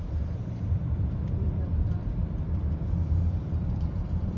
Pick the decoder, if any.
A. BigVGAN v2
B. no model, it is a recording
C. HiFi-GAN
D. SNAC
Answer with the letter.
A